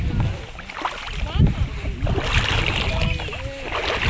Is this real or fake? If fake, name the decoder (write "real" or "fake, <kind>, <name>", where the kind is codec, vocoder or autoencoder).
real